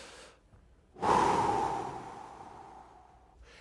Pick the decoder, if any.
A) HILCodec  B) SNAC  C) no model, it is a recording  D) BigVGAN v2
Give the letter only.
C